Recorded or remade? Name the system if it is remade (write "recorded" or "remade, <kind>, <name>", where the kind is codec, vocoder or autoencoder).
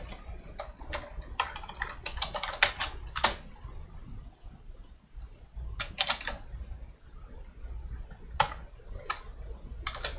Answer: recorded